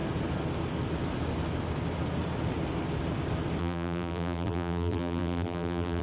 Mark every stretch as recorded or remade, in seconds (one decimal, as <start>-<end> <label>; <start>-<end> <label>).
0.0-3.6 recorded; 3.6-6.0 remade